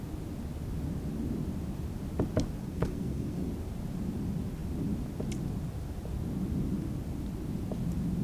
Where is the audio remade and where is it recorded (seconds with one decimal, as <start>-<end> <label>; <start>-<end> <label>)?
0.0-2.6 recorded; 2.6-3.5 remade; 3.5-8.2 recorded